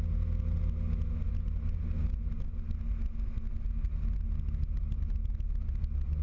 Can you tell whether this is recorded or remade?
recorded